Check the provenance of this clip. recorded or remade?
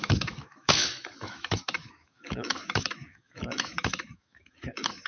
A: remade